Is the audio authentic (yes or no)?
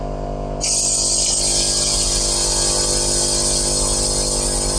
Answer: yes